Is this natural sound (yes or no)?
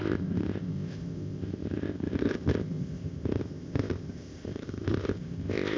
no